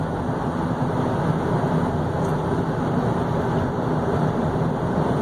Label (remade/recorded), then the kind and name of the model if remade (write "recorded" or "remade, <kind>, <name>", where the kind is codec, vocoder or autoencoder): recorded